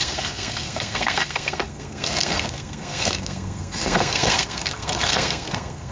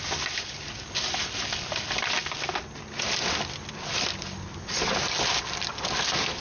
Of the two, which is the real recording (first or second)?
second